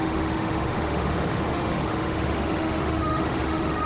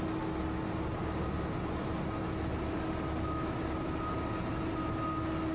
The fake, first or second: first